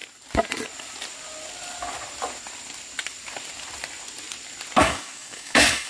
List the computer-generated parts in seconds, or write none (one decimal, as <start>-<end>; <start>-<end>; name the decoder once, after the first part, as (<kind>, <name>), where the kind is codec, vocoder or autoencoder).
4.8-5.9 (codec, DAC)